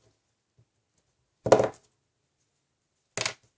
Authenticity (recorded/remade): recorded